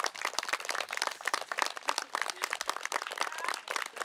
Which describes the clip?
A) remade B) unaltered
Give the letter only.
B